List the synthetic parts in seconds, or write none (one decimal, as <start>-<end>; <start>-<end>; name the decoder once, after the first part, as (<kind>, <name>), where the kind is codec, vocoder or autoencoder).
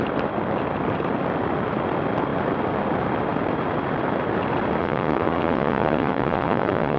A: 4.8-7.0 (vocoder, Vocos)